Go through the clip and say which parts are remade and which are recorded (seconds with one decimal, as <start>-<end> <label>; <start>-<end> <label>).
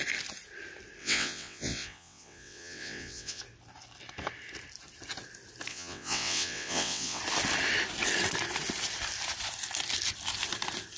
0.0-1.0 recorded; 1.0-3.4 remade; 3.4-5.7 recorded; 5.7-7.2 remade; 7.2-11.0 recorded